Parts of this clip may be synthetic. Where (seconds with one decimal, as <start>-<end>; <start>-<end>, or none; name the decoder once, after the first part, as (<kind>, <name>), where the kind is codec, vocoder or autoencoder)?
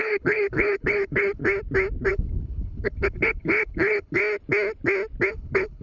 0.0-1.4 (codec, HILCodec); 2.1-4.2; 5.3-5.8